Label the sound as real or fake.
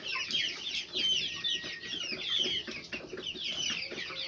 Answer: real